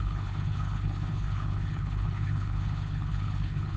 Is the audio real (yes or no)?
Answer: no